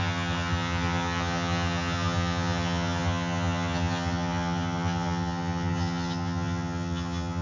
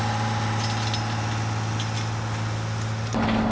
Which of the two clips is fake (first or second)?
first